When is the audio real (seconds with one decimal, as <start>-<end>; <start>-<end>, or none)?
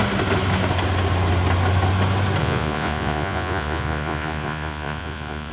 0.0-2.4